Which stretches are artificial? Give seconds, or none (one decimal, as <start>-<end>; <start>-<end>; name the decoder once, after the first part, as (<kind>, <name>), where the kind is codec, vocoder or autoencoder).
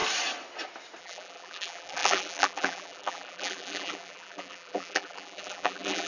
1.0-6.1 (vocoder, BigVGAN v2)